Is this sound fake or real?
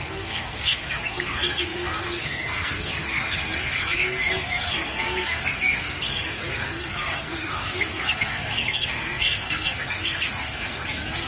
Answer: fake